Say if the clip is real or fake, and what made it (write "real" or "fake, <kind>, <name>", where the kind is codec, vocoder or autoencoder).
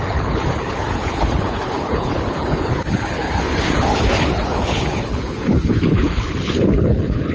fake, codec, HILCodec